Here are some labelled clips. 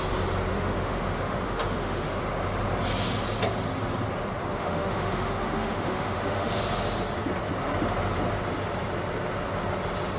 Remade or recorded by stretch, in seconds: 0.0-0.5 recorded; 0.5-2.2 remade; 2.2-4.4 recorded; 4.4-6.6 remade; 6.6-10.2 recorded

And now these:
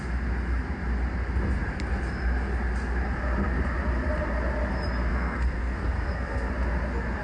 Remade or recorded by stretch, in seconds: 0.0-5.1 recorded; 5.1-6.5 remade; 6.5-7.2 recorded

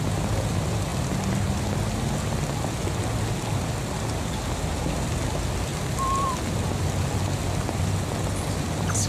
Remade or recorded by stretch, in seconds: 0.0-9.1 recorded

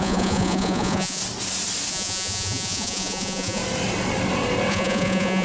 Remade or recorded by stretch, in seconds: 0.0-1.2 remade; 1.2-1.9 recorded; 1.9-3.6 remade; 3.6-4.7 recorded; 4.7-5.4 remade

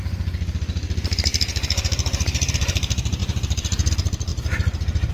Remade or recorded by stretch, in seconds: 0.0-5.1 remade